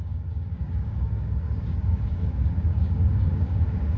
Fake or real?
fake